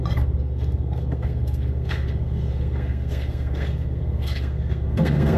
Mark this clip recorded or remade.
remade